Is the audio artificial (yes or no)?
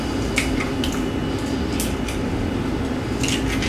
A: no